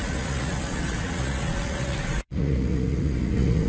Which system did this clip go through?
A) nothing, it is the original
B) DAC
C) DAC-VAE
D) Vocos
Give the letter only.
D